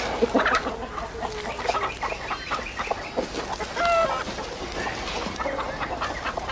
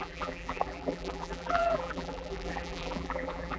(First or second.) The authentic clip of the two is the first